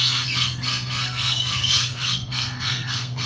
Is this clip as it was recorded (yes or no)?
no